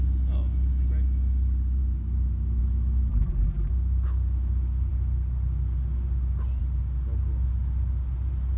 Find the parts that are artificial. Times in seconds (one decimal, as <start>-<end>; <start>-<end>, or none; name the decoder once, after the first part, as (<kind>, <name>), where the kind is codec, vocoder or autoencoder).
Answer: 3.1-3.7 (vocoder, BigVGAN v2)